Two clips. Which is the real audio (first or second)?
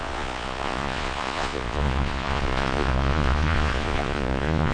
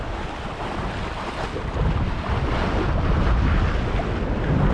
second